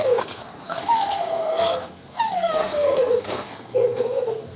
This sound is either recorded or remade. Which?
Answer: remade